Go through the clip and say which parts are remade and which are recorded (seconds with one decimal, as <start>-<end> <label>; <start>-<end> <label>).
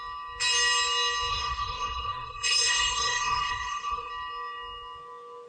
0.0-1.3 recorded; 1.3-4.1 remade; 4.1-5.5 recorded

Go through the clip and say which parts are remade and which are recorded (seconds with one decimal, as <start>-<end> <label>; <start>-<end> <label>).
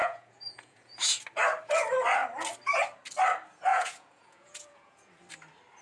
0.0-1.2 remade; 1.2-3.7 recorded; 3.7-5.1 remade; 5.1-5.8 recorded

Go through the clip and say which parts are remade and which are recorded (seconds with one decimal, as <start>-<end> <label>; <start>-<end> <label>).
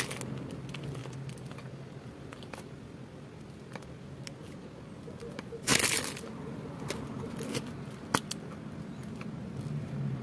0.0-10.2 recorded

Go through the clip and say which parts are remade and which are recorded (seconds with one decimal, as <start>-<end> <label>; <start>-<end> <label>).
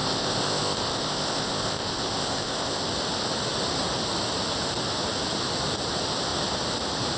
0.0-2.8 remade; 2.8-7.2 recorded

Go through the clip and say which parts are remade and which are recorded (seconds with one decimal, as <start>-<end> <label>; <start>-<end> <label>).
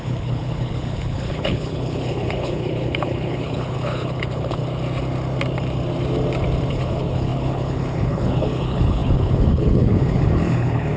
0.0-4.6 remade; 4.6-6.7 recorded; 6.7-11.0 remade